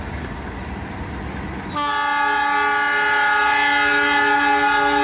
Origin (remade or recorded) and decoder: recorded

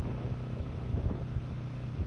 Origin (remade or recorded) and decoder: remade, autoencoder, DAC-VAE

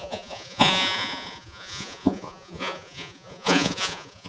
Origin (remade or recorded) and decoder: remade, vocoder, Vocos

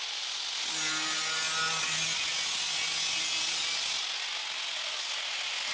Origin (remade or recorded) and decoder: recorded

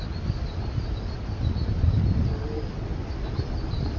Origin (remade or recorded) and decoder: recorded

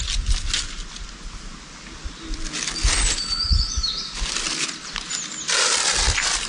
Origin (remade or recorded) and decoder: recorded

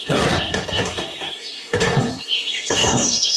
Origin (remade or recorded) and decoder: remade, codec, SNAC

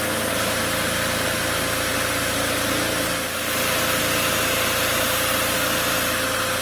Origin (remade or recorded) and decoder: recorded